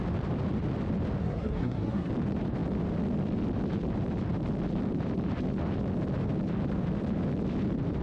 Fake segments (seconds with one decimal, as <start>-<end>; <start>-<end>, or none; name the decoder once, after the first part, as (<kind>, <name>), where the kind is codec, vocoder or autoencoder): 1.2-2.1 (codec, SNAC)